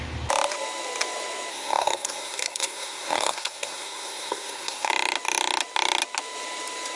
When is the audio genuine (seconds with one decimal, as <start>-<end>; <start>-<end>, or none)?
0.0-1.5; 4.9-7.0